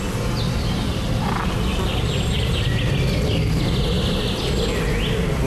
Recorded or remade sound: recorded